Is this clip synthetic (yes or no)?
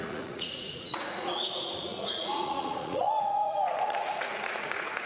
yes